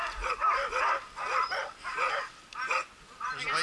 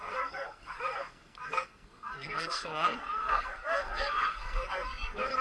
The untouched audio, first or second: first